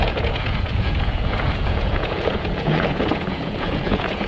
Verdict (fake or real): fake